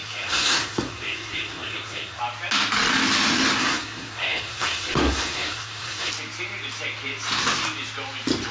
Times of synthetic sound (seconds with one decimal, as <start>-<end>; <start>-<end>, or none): 0.0-2.2; 3.6-6.1